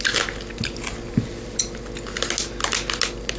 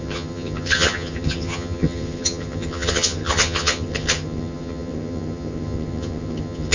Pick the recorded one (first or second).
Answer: first